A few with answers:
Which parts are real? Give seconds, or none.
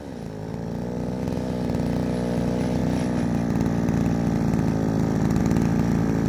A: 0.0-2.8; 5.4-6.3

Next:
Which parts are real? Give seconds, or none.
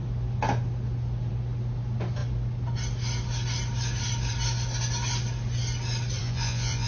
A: 0.0-6.2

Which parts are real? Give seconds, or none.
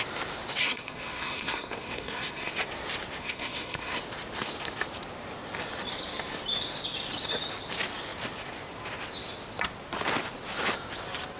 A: 0.0-0.6; 2.5-3.2; 4.0-11.4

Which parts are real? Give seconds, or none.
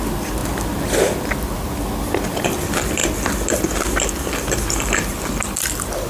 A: 0.4-2.4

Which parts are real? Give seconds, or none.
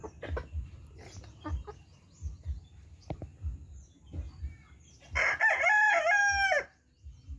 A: 0.0-7.4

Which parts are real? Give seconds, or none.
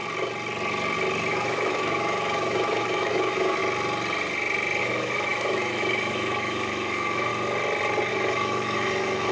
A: 0.0-1.3; 3.6-4.8; 7.3-8.1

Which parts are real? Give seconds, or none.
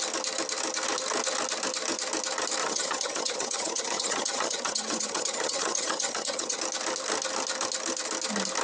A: 0.0-2.6; 6.6-8.6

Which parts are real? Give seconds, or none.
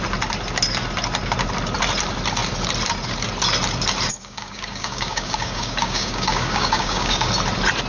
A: 0.0-4.1; 7.3-7.9